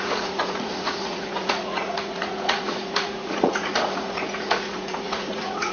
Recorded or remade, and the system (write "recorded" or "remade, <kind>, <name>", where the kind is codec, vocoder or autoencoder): remade, vocoder, Vocos